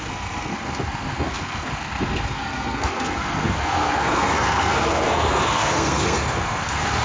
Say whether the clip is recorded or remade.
remade